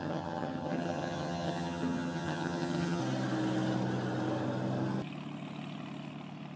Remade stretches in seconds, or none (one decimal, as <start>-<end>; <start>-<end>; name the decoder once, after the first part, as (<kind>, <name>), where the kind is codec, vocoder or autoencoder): 0.0-3.0 (vocoder, HiFi-GAN)